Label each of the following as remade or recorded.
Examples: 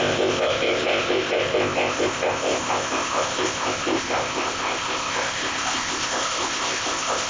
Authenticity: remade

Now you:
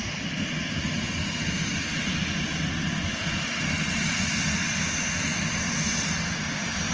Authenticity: recorded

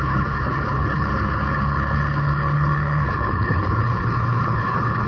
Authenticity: remade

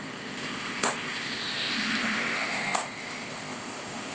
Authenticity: remade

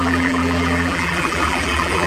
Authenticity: remade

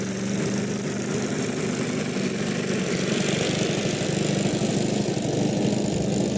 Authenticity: recorded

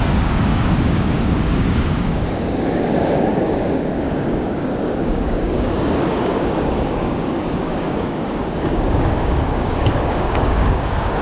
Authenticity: remade